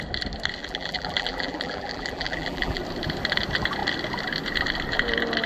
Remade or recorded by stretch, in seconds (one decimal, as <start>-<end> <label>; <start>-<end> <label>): 0.0-0.6 recorded; 0.6-2.8 remade; 2.8-5.5 recorded